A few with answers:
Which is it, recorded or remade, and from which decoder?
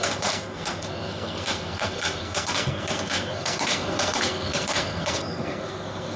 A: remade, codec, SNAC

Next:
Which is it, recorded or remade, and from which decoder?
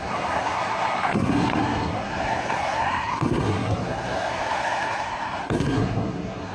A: remade, codec, SNAC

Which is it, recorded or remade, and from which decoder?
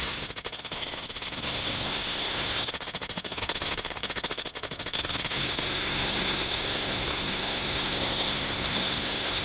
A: remade, codec, SNAC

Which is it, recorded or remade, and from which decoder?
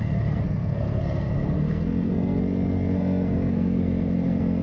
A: remade, codec, SNAC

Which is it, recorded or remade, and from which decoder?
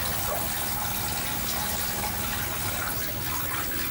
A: recorded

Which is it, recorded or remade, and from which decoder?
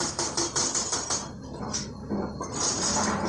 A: recorded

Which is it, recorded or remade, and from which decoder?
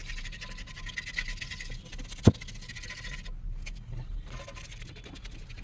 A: recorded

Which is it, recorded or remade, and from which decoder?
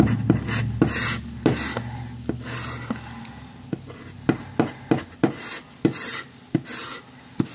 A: recorded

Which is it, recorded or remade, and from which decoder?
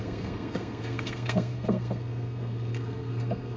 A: remade, codec, SNAC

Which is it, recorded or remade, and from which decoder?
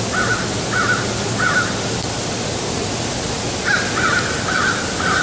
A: recorded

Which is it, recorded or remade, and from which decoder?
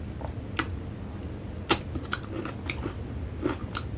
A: recorded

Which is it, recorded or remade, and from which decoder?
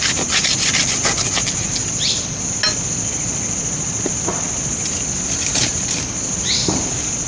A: recorded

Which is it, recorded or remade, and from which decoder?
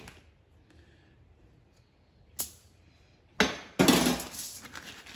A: recorded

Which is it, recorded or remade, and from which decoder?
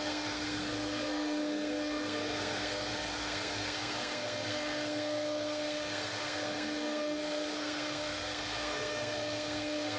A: remade, codec, SNAC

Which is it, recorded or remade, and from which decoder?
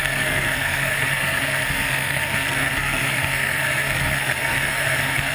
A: remade, codec, SNAC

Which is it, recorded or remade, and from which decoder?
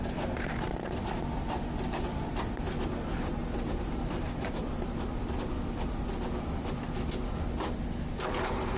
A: recorded